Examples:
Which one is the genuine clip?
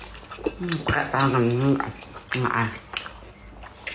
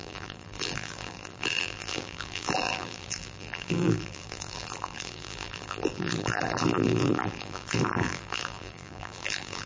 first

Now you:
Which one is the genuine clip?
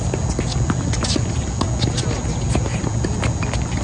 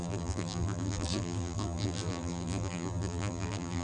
first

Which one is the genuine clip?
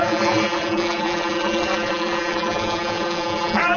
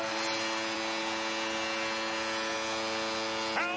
second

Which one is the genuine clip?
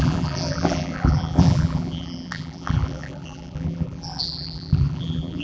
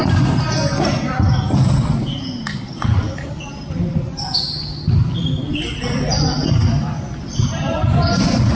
second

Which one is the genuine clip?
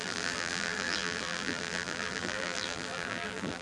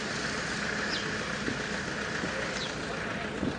second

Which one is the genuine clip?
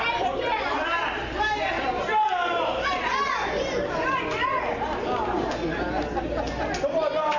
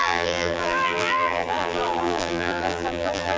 first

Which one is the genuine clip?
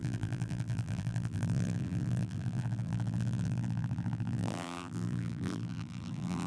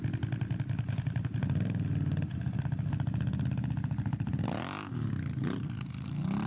second